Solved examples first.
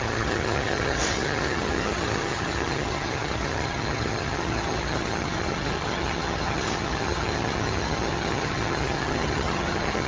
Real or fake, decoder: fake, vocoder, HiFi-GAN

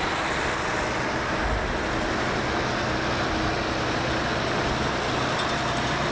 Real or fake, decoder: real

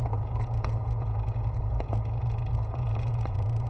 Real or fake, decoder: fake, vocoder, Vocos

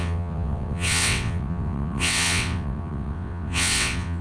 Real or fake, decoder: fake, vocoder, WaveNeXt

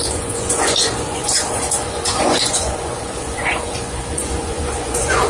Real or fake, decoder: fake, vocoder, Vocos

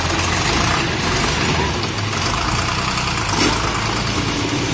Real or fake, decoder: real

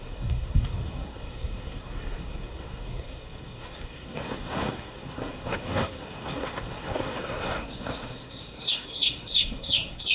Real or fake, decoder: fake, codec, SNAC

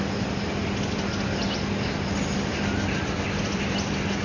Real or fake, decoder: real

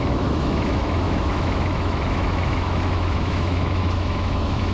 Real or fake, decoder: fake, autoencoder, DAC-VAE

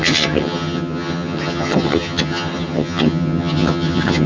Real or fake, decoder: fake, vocoder, HiFi-GAN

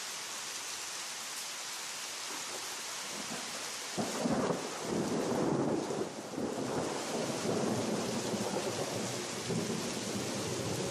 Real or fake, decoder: real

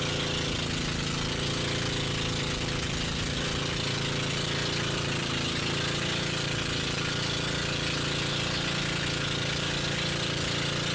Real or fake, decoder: real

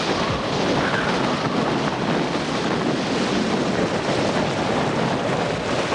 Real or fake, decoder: real